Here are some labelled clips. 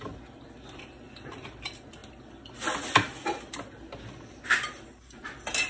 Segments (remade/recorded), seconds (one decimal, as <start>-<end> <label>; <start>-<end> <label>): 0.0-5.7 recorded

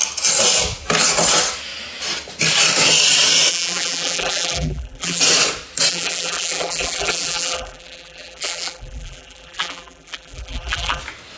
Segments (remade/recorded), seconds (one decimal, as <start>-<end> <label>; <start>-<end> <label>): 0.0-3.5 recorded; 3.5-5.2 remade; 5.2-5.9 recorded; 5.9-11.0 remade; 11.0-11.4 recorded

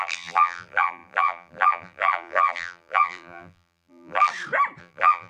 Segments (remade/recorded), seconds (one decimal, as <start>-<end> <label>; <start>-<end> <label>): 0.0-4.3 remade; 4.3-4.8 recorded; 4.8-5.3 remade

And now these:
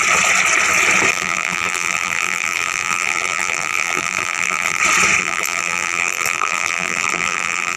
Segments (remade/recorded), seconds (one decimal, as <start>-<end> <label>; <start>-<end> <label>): 0.0-1.1 recorded; 1.1-4.8 remade; 4.8-5.2 recorded; 5.2-7.8 remade

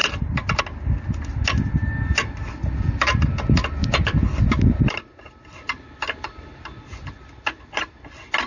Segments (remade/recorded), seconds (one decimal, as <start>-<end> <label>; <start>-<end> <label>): 0.0-0.6 remade; 0.6-3.8 recorded; 3.8-4.4 remade; 4.4-8.5 recorded

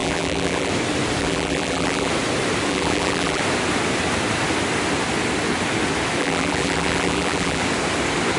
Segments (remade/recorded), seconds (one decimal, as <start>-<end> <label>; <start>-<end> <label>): 0.0-0.7 remade; 0.7-1.2 recorded; 1.2-2.1 remade; 2.1-2.7 recorded; 2.7-3.4 remade; 3.4-6.2 recorded; 6.2-7.6 remade; 7.6-8.4 recorded

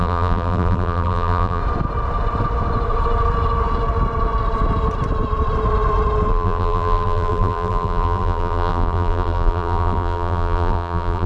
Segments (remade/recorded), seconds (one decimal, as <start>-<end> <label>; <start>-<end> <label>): 0.0-1.6 remade; 1.6-6.3 recorded; 6.3-11.3 remade